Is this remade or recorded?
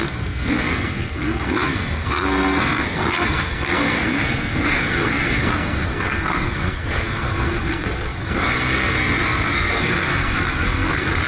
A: remade